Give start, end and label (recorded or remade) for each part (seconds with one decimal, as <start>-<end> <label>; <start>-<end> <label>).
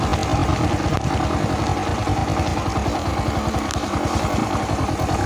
0.0-5.3 recorded